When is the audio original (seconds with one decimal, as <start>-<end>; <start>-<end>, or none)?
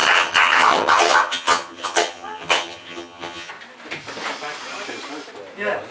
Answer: 3.5-5.9